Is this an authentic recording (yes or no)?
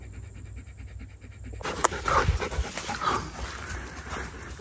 yes